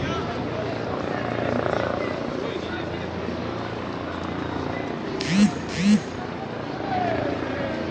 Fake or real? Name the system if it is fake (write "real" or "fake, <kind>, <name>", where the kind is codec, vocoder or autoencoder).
real